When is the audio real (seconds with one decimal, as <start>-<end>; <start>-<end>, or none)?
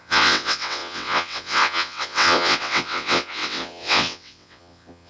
none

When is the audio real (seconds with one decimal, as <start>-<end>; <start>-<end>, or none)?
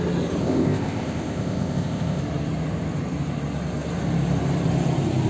0.0-0.4; 2.2-5.3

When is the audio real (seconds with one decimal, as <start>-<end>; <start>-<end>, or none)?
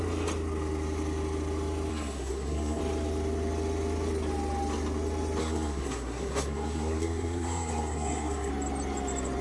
0.0-1.9; 2.8-5.4; 8.5-9.4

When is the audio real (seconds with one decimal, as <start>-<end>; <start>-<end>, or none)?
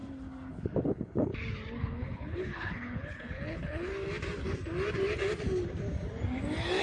0.0-0.5; 1.3-1.8; 3.9-6.8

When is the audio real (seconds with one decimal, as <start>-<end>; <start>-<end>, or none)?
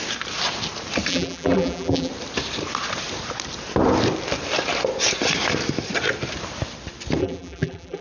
0.0-1.1; 2.1-7.2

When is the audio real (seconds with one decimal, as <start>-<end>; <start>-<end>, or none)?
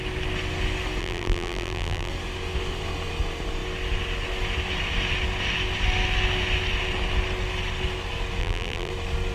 0.0-1.0; 2.1-8.4; 8.9-9.3